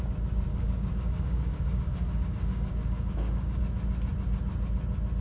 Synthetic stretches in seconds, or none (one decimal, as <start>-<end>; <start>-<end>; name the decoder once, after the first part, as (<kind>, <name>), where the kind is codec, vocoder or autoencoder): 0.5-3.6 (codec, DAC)